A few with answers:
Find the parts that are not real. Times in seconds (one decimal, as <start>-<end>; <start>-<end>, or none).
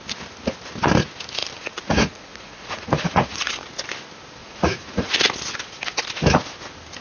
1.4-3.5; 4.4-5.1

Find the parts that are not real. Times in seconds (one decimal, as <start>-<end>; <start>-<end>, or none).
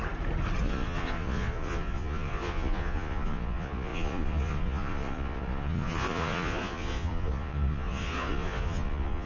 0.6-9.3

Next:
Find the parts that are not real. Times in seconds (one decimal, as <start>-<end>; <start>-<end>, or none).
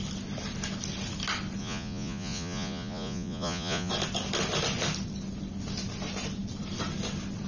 1.6-3.9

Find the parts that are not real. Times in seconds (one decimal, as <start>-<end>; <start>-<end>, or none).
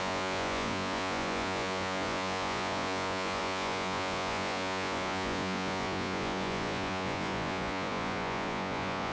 0.0-9.1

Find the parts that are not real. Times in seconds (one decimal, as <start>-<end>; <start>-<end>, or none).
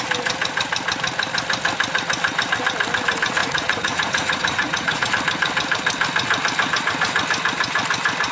3.4-5.1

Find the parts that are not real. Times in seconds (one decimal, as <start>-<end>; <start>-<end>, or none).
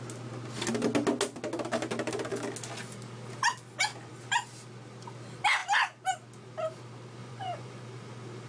7.2-7.8